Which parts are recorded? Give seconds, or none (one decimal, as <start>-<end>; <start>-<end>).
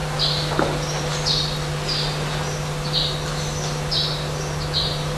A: 0.0-5.2